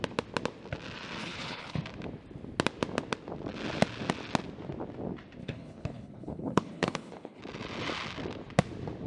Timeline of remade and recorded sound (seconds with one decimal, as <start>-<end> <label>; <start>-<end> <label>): 0.0-1.2 recorded; 1.2-1.8 remade; 1.8-5.4 recorded; 5.4-7.4 remade; 7.4-9.1 recorded